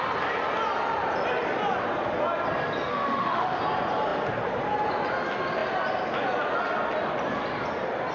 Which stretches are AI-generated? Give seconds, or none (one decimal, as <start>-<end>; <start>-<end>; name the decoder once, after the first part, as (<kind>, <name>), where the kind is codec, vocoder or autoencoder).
2.9-3.6 (autoencoder, DAC-VAE)